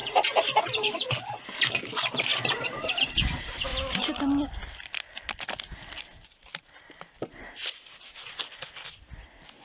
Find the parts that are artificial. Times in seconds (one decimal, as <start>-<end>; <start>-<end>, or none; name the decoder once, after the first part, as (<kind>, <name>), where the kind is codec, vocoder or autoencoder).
0.0-1.3 (vocoder, BigVGAN v2); 2.3-2.9